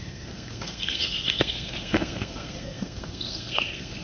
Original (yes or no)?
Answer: no